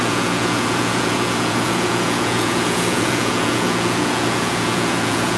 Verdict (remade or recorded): remade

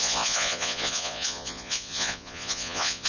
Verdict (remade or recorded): remade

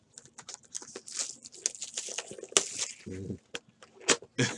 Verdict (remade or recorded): recorded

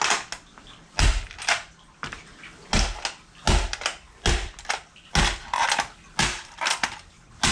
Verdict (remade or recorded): recorded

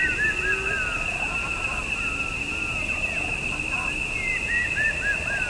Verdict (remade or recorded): recorded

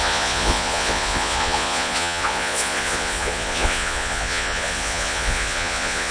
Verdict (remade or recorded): remade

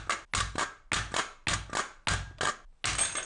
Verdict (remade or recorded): recorded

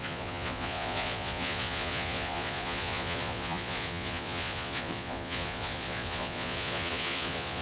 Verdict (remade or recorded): remade